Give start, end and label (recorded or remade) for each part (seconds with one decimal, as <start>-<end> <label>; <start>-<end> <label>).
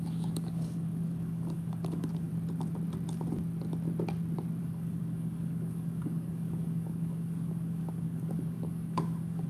0.0-2.3 remade; 2.3-4.6 recorded; 4.6-9.5 remade